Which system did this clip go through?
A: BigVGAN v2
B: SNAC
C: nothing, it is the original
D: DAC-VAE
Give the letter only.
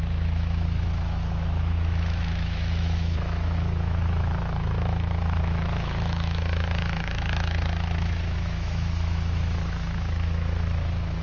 D